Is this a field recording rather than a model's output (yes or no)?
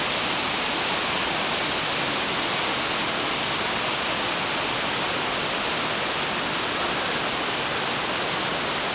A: yes